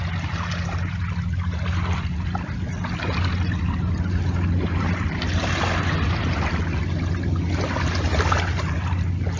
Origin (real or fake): real